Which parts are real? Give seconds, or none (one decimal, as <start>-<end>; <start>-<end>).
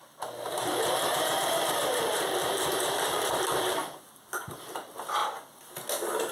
0.0-0.5; 3.3-3.8; 4.6-6.3